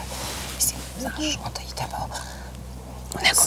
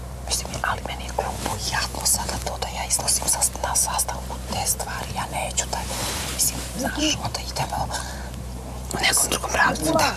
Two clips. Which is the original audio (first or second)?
first